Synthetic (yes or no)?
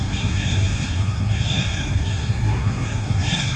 yes